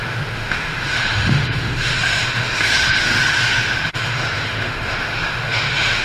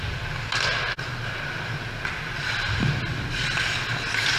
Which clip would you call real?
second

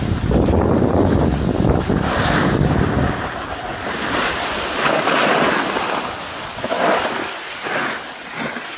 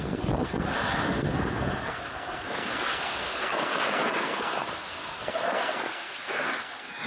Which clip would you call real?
first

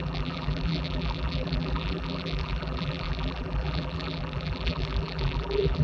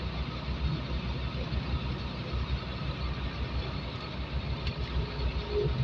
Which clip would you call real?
second